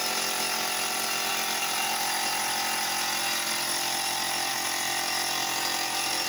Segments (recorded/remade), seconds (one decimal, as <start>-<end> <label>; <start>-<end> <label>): 0.0-6.3 recorded